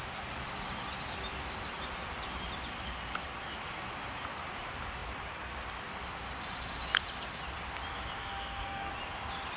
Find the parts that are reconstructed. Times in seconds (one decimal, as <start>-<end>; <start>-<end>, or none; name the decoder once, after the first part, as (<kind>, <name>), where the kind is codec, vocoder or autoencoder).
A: 8.2-8.9 (codec, SNAC)